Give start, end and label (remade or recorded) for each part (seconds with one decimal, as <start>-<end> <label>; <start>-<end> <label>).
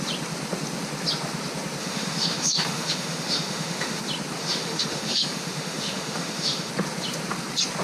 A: 0.0-1.8 recorded; 1.8-4.0 remade; 4.0-4.4 recorded; 4.4-6.7 remade; 6.7-7.8 recorded